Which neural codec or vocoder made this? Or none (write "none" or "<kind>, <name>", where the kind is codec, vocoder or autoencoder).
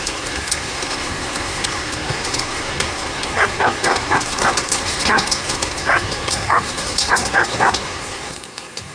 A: codec, SNAC